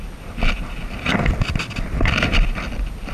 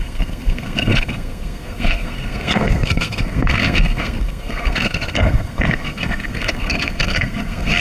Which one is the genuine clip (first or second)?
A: first